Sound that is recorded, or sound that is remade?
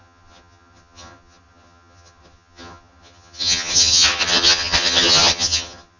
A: remade